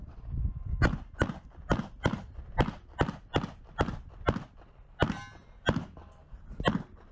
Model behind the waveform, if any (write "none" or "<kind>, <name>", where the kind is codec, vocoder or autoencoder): none